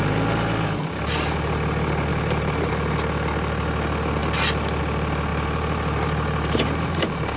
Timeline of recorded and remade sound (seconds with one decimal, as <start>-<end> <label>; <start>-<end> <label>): 0.0-2.1 recorded; 2.1-2.7 remade; 2.7-5.3 recorded; 5.3-7.4 remade

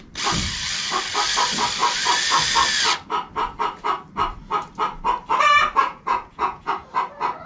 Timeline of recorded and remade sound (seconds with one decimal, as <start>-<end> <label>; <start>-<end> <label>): 0.0-5.8 recorded; 5.8-6.7 remade; 6.7-7.5 recorded

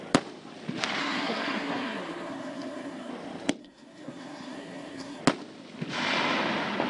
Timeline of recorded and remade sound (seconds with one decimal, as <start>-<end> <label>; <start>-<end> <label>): 0.0-1.0 recorded; 1.0-3.1 remade; 3.1-3.6 recorded; 3.6-5.2 remade; 5.2-6.9 recorded

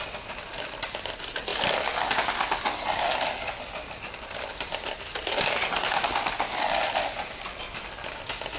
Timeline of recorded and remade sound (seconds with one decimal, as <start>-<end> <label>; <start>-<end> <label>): 0.0-8.6 recorded

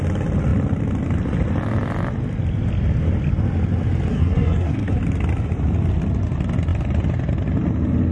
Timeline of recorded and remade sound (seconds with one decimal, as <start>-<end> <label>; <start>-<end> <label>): 0.0-4.1 recorded; 4.1-5.0 remade; 5.0-8.1 recorded

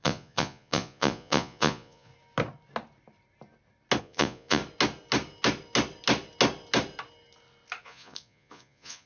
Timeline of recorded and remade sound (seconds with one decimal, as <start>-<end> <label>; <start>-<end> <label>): 0.0-2.1 remade; 2.1-4.0 recorded; 4.0-4.6 remade; 4.6-7.8 recorded; 7.8-9.1 remade